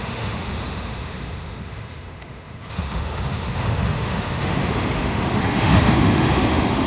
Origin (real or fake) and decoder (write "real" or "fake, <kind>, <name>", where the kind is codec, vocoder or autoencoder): fake, autoencoder, DAC-VAE